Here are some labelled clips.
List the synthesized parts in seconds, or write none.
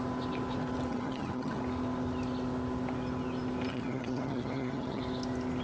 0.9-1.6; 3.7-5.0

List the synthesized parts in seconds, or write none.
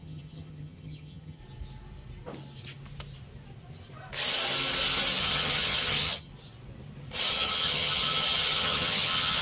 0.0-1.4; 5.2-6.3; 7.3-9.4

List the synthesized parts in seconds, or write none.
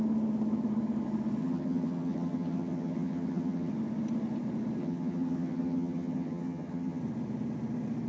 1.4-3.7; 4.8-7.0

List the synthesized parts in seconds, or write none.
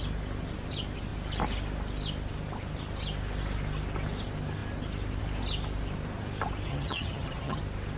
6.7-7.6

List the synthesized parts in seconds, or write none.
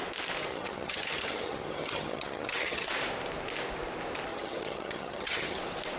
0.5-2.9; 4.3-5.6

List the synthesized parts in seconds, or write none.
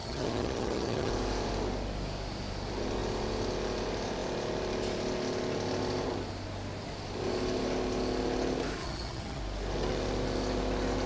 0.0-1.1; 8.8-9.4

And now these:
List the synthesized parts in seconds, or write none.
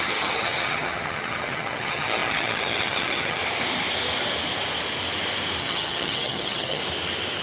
0.0-3.4; 5.6-6.8